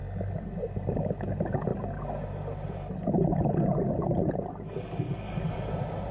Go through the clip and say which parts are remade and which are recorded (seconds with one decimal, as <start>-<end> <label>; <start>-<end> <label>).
0.0-6.1 recorded